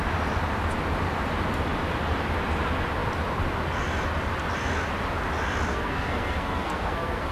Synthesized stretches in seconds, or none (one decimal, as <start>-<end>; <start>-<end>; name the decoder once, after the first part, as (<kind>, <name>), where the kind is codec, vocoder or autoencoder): 5.7-7.3 (codec, SNAC)